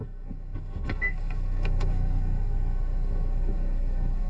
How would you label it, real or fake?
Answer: fake